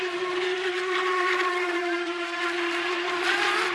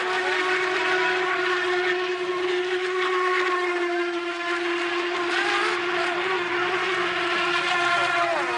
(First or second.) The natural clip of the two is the second